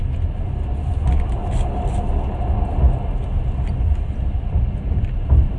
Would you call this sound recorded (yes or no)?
yes